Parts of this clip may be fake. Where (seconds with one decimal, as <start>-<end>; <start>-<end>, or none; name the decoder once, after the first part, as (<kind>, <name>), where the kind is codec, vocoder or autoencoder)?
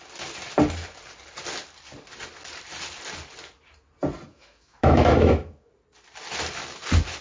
4.3-5.7 (autoencoder, DAC-VAE)